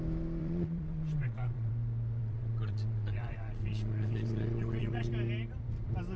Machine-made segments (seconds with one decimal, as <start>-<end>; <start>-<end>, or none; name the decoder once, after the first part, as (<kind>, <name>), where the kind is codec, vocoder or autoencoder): 0.4-1.7 (vocoder, WaveNeXt); 2.2-5.1